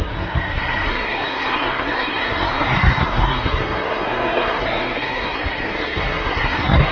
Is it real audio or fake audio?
fake